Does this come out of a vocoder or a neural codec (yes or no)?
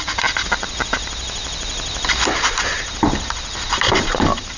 no